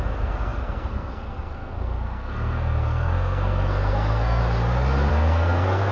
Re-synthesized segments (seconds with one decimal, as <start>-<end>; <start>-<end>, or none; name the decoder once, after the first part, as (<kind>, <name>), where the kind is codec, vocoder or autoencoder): 0.0-4.4 (codec, SNAC); 5.1-5.9